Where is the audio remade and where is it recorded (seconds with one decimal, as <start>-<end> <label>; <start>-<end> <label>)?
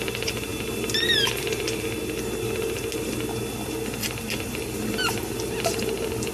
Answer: 0.0-6.3 recorded